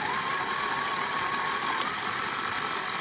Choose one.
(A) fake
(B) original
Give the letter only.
B